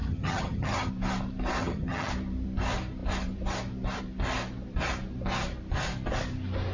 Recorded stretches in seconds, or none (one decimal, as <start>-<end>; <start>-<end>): 0.9-1.6; 2.1-6.7